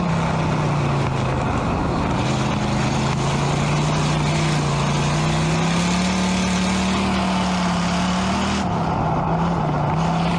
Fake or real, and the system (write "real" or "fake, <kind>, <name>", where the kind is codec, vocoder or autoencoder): real